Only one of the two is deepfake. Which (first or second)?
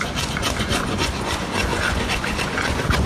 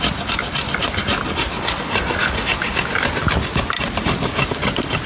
first